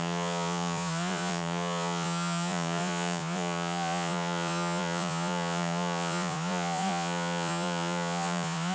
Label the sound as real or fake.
fake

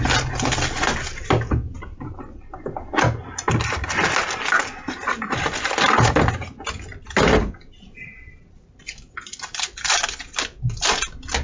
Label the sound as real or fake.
real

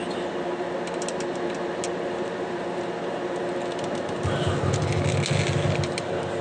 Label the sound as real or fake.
real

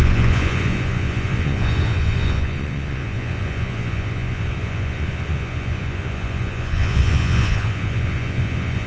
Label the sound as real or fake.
fake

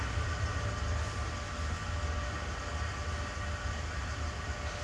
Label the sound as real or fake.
real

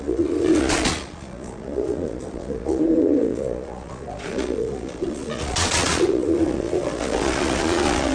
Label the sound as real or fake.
fake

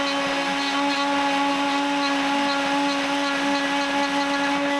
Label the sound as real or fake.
real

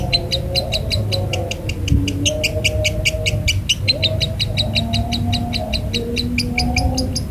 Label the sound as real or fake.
real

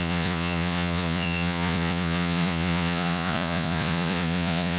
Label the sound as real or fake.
fake